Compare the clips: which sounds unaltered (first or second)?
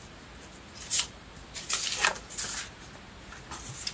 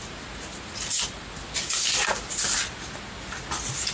second